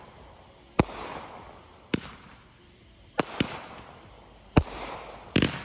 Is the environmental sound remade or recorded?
recorded